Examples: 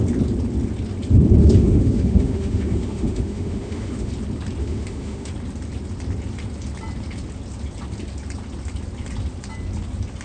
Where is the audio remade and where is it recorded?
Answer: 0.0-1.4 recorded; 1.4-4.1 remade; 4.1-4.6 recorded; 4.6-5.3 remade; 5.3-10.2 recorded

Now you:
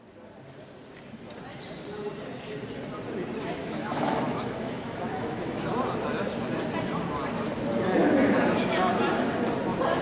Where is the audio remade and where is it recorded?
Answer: 0.0-3.6 recorded; 3.6-5.7 remade; 5.7-8.0 recorded; 8.0-8.9 remade; 8.9-10.0 recorded

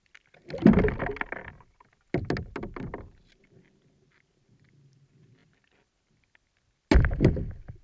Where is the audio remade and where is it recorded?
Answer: 0.0-7.8 recorded

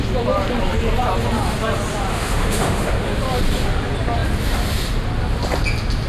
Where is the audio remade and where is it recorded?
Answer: 0.0-2.1 recorded; 2.1-3.2 remade; 3.2-6.1 recorded